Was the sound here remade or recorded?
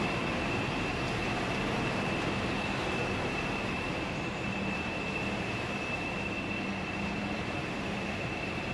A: remade